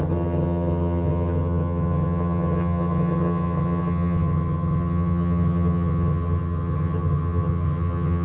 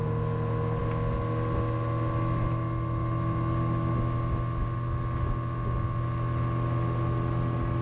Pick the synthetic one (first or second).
first